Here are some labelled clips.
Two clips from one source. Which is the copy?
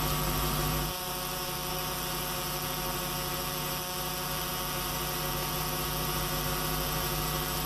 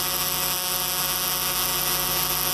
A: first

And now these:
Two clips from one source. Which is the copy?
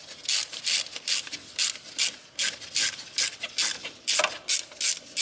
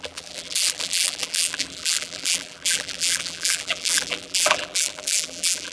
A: second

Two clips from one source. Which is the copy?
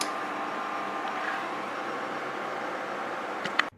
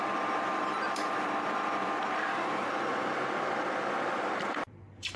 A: second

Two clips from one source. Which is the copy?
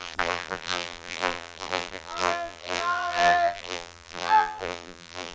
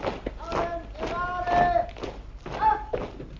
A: first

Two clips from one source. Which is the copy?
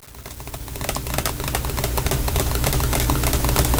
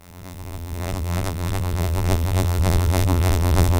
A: second